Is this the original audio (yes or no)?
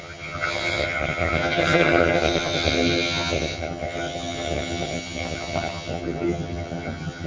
no